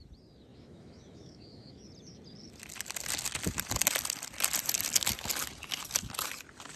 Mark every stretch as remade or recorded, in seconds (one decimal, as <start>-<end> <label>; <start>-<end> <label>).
0.0-0.5 recorded; 0.5-1.8 remade; 1.8-6.8 recorded